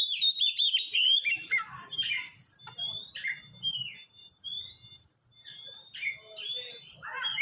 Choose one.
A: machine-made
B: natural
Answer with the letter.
A